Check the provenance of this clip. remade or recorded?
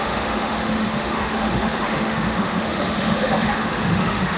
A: remade